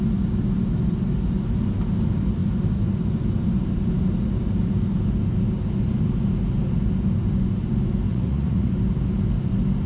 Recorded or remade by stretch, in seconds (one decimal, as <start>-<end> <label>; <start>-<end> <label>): 0.0-8.1 recorded; 8.1-8.7 remade; 8.7-9.9 recorded